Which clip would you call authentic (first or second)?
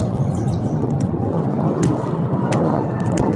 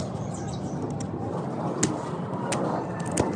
second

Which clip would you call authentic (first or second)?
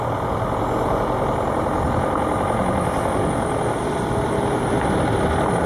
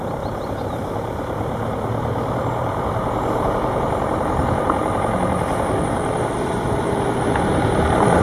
first